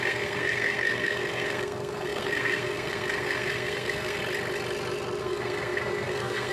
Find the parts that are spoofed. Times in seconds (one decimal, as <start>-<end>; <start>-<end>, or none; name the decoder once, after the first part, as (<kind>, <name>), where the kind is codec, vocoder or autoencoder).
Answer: 0.0-4.2 (codec, SNAC); 5.2-6.5